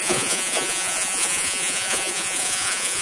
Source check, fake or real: fake